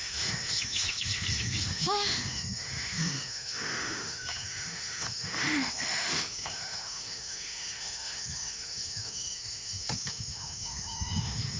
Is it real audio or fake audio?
fake